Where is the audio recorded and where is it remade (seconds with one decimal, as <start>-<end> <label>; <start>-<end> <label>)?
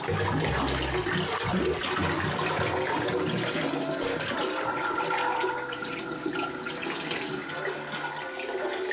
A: 0.0-8.9 recorded